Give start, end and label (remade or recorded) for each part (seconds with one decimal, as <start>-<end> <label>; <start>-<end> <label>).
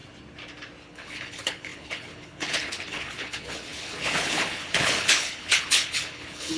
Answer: 0.0-0.8 recorded; 0.8-6.6 remade